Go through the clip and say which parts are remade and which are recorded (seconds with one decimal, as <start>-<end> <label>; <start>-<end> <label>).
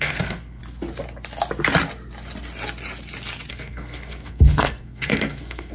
0.0-0.6 remade; 0.6-3.5 recorded; 3.5-5.7 remade